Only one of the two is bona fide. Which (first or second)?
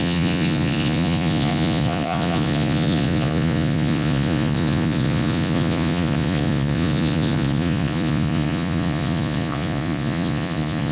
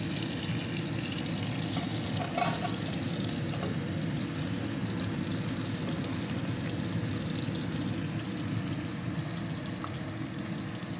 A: second